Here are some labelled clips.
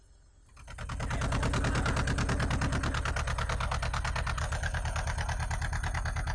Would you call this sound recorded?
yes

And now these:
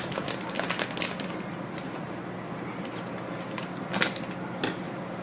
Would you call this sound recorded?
yes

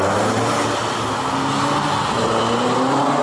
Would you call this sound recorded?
yes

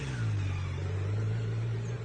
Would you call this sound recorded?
yes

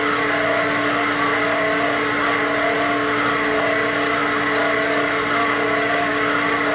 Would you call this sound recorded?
yes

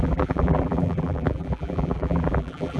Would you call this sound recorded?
no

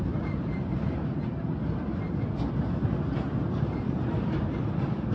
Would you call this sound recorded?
no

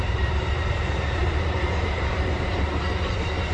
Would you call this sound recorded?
no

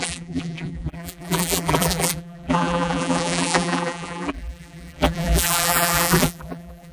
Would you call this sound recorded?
no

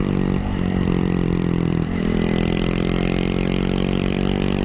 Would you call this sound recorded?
no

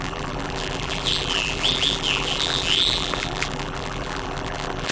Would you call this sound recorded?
no